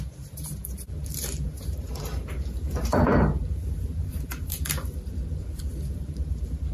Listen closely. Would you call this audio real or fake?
fake